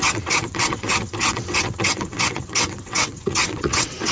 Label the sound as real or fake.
fake